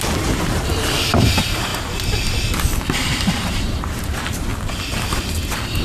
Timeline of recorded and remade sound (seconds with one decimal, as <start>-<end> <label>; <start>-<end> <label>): 0.0-1.7 remade; 1.7-2.5 recorded; 2.5-4.5 remade; 4.5-5.8 recorded